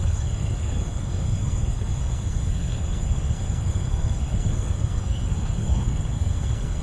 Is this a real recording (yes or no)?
no